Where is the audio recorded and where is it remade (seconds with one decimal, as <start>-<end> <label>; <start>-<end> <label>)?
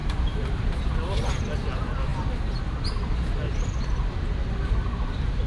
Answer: 0.0-0.8 remade; 0.8-5.5 recorded